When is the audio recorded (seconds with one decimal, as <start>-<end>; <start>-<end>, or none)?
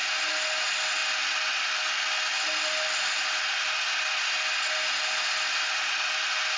0.0-6.6